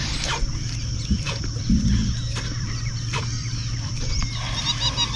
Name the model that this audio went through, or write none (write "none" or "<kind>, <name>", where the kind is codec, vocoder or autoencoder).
vocoder, BigVGAN v2